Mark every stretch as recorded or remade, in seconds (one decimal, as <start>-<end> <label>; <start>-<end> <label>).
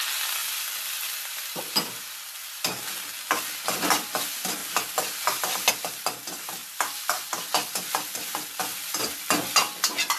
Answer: 0.0-10.2 recorded